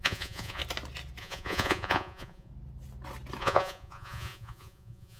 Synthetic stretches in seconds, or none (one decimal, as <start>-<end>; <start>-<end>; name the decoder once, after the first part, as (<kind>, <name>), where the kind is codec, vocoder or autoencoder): 0.0-0.6 (vocoder, Vocos); 1.2-2.5; 3.4-5.2